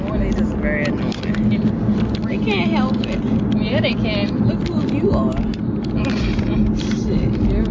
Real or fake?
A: real